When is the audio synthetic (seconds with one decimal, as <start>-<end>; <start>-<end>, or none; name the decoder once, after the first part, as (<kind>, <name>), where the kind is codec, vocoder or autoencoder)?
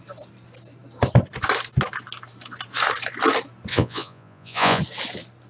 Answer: 3.7-4.8 (vocoder, Vocos)